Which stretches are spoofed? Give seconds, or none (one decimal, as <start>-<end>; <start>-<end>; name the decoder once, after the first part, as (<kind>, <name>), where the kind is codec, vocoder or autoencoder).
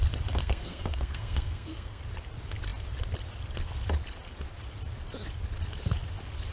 0.4-2.0 (codec, SNAC)